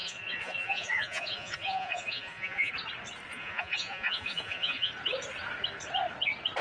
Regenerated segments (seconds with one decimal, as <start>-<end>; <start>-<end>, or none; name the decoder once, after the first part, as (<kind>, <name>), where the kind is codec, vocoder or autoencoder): 0.0-2.7 (vocoder, Vocos); 3.3-4.9